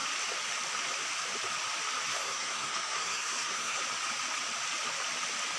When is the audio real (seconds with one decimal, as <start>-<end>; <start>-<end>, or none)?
0.0-2.1; 3.8-5.6